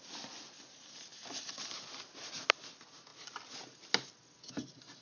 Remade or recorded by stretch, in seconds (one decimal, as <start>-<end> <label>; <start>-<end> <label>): 0.0-5.0 recorded